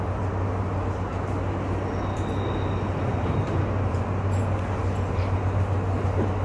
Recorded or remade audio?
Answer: recorded